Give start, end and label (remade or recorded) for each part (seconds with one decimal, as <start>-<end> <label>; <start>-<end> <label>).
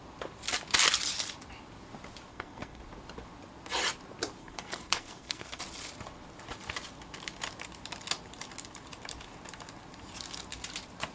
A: 0.0-2.3 recorded; 2.3-2.8 remade; 2.8-4.4 recorded; 4.4-5.6 remade; 5.6-11.1 recorded